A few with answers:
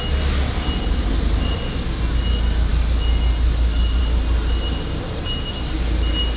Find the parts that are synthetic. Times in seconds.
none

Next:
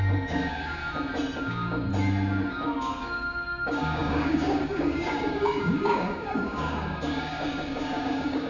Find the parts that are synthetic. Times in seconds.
0.0-0.8 (codec, DAC); 1.4-1.9; 2.5-8.5

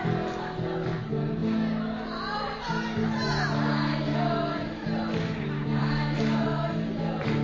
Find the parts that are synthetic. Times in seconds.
none

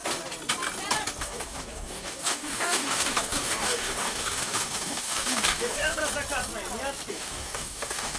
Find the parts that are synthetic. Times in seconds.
1.2-6.0 (codec, DAC); 7.1-8.2

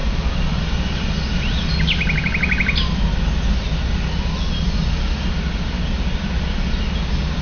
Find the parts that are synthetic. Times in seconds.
none

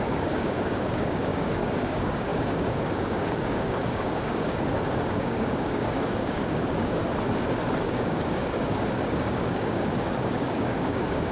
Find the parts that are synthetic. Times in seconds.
0.0-7.0 (codec, DAC); 7.8-11.3